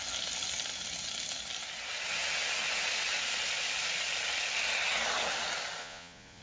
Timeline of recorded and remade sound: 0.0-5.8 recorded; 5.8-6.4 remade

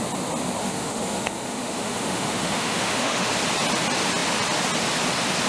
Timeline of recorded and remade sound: 0.0-0.6 recorded; 0.6-3.3 remade; 3.3-5.5 recorded

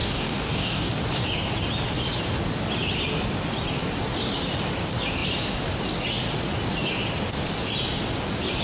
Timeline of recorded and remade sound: 0.0-0.9 remade; 0.9-8.6 recorded

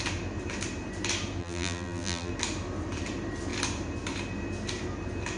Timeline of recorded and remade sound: 0.0-1.4 recorded; 1.4-2.3 remade; 2.3-5.4 recorded

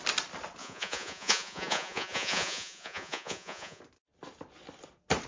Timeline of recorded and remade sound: 0.0-0.6 recorded; 0.6-3.8 remade; 3.8-5.3 recorded

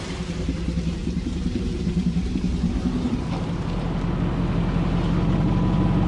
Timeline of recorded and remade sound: 0.0-1.0 recorded; 1.0-2.4 remade; 2.4-6.1 recorded

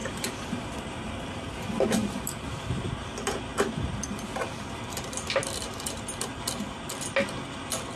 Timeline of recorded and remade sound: 0.0-1.1 remade; 1.1-2.0 recorded; 2.0-2.9 remade; 2.9-8.0 recorded